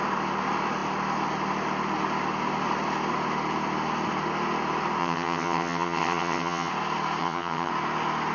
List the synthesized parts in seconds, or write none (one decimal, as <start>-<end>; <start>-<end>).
5.0-6.7; 7.2-7.7